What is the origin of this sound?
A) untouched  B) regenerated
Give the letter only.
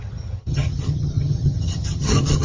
B